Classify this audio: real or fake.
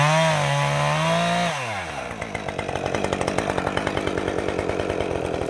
real